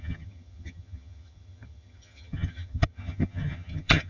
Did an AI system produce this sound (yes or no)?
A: yes